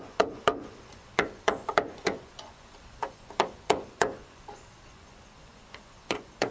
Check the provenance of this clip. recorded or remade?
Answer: remade